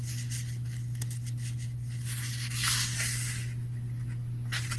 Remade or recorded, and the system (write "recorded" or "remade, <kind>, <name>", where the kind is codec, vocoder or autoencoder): recorded